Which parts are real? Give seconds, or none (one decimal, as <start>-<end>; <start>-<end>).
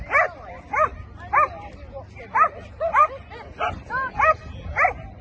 0.0-5.2